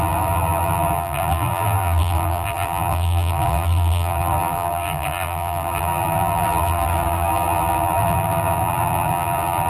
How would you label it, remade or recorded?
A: remade